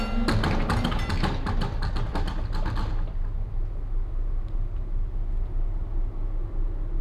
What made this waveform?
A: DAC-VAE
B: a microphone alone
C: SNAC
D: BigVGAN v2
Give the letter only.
B